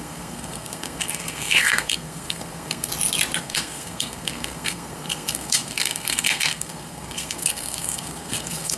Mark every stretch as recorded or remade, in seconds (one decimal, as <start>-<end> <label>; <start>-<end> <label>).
0.0-2.9 remade; 2.9-3.4 recorded; 3.4-8.8 remade